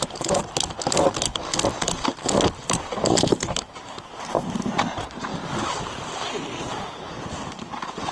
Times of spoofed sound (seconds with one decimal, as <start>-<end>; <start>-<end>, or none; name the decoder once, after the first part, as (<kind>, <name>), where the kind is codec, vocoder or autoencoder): 0.0-0.4 (vocoder, BigVGAN v2); 2.6-5.3; 6.7-8.1